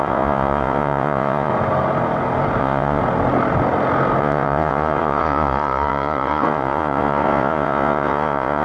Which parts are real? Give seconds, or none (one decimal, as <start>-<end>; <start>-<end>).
1.5-2.6; 3.0-4.2